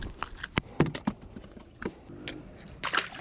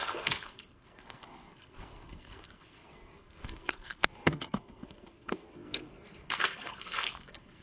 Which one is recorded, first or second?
first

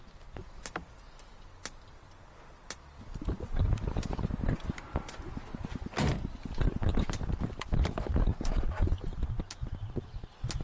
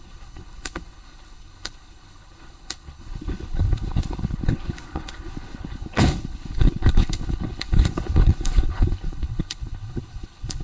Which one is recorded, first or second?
first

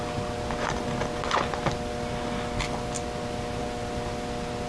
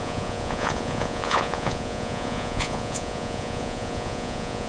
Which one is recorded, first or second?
first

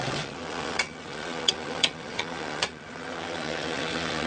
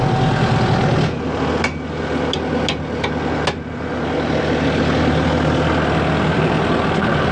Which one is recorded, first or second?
second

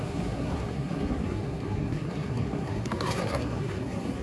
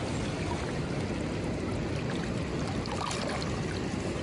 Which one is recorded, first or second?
second